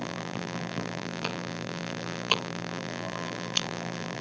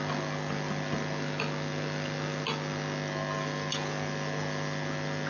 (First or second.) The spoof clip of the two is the first